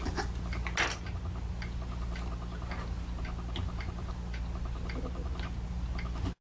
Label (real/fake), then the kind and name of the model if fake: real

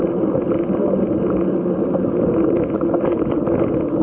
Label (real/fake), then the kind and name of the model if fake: real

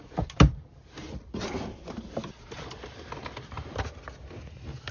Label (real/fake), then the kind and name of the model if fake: real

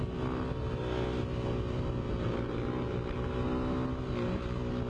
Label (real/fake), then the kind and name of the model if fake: real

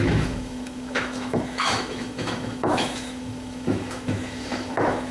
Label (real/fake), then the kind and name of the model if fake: fake, autoencoder, DAC-VAE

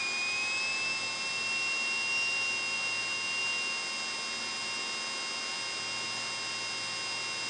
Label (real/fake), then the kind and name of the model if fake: real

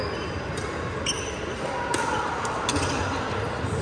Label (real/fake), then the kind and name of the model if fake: real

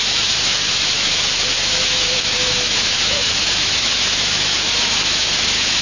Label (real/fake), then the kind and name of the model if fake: fake, autoencoder, DAC-VAE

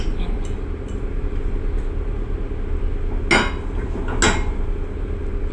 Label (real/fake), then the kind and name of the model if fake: real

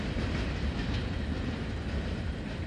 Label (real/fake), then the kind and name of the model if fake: real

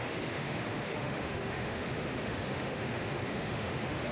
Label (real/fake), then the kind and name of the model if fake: fake, autoencoder, DAC-VAE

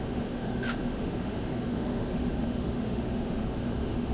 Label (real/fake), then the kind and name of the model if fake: fake, autoencoder, DAC-VAE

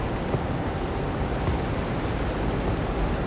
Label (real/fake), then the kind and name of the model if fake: real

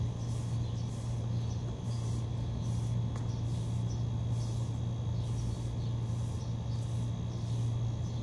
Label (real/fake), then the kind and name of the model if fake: real